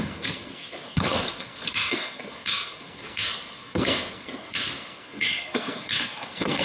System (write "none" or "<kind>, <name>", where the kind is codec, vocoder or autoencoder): codec, SNAC